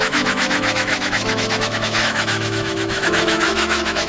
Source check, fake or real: fake